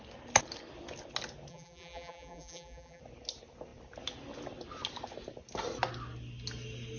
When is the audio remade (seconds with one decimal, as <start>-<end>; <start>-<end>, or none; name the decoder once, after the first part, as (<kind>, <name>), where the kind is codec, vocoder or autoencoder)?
1.5-3.0 (vocoder, BigVGAN v2)